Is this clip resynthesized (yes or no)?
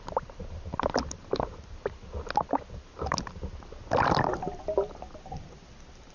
no